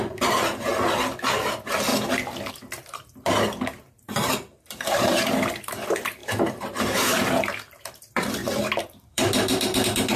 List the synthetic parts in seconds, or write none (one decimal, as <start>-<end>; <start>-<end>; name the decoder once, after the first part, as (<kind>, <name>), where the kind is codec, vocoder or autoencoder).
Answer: 0.0-0.7 (vocoder, BigVGAN v2); 1.5-1.9; 2.5-8.4; 9.0-10.2